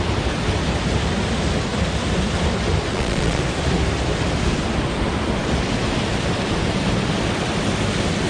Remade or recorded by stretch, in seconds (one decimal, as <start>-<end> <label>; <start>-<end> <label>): 0.0-2.9 recorded; 2.9-3.4 remade; 3.4-8.3 recorded